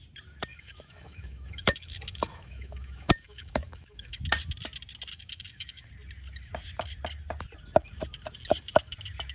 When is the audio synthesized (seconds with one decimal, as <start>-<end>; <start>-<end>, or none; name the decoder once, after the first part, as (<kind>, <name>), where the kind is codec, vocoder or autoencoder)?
0.5-4.2 (autoencoder, DAC-VAE); 5.1-5.9